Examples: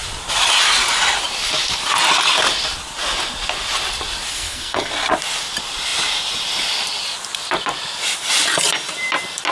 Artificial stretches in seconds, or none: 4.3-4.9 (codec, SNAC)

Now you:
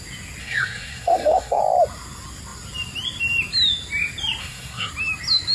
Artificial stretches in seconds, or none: 0.4-1.6 (codec, SNAC); 4.4-4.9

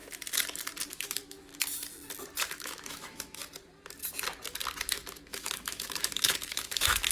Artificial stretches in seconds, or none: 0.9-1.5 (autoencoder, DAC-VAE); 2.5-3.4; 4.9-7.1

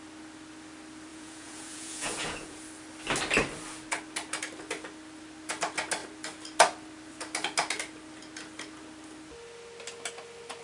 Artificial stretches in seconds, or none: 1.1-2.6 (vocoder, Vocos)

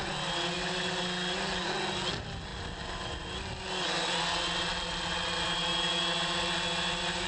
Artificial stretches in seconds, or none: none